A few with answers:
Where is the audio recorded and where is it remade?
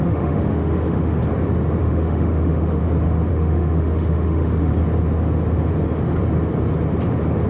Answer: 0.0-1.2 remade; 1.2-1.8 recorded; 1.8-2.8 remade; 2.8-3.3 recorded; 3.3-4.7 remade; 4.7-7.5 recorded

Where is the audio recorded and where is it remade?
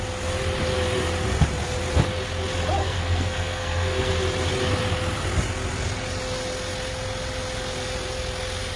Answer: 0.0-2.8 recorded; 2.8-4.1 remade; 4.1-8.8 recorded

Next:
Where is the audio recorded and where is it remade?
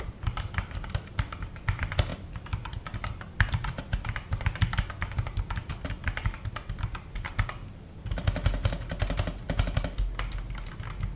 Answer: 0.0-11.2 recorded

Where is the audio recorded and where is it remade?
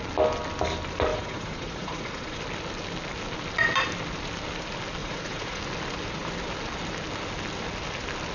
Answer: 0.0-1.1 recorded; 1.1-2.4 remade; 2.4-5.0 recorded; 5.0-5.6 remade; 5.6-8.3 recorded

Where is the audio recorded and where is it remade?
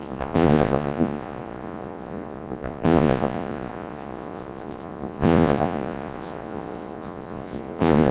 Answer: 0.0-8.1 remade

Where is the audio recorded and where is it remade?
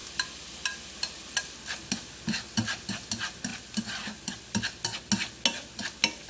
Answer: 0.0-6.3 recorded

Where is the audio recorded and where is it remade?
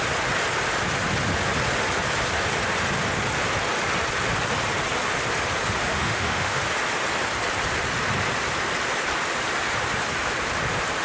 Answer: 0.0-5.9 recorded; 5.9-6.6 remade; 6.6-11.0 recorded